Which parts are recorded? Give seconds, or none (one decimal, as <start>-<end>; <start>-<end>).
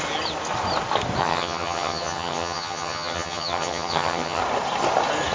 0.0-1.2; 4.4-5.3